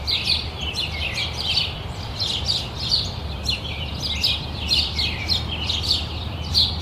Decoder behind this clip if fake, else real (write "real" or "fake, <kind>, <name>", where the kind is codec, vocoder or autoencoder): real